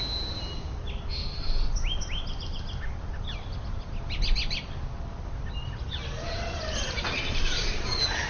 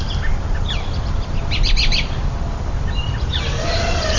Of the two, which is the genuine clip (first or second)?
first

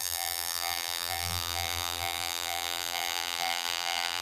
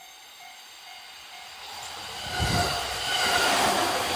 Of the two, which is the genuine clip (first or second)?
second